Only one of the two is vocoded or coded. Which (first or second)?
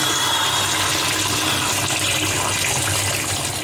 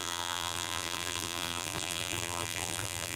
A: second